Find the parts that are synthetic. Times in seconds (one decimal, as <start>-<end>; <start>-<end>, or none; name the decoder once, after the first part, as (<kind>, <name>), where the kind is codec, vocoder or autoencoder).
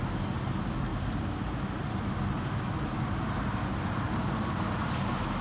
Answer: none